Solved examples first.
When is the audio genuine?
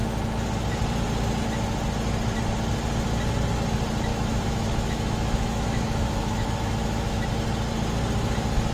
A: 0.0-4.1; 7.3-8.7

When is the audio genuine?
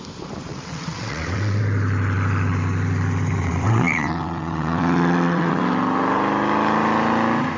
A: 0.0-0.5; 1.6-3.4; 5.6-7.6